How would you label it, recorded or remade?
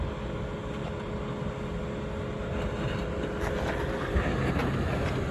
recorded